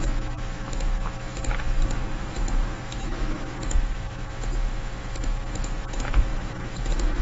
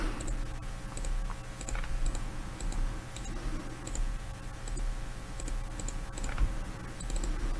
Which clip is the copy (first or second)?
first